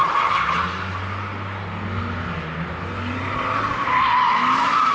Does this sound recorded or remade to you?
recorded